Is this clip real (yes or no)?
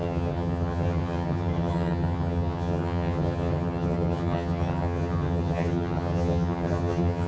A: no